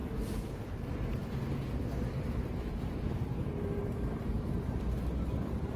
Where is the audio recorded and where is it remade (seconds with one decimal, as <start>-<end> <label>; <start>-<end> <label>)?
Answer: 0.0-5.8 recorded